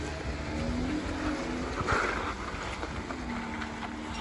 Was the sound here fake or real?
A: real